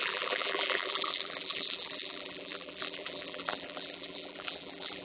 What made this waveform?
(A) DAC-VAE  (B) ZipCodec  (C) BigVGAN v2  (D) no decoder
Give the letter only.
C